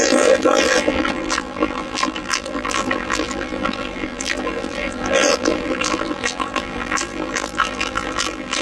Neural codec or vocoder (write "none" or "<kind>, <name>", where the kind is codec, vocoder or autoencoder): vocoder, BigVGAN v2